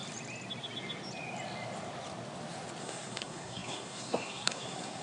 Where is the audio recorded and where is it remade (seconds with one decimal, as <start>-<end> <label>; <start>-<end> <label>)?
0.0-2.8 recorded; 2.8-5.0 remade